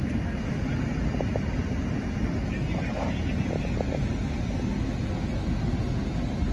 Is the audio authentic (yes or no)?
yes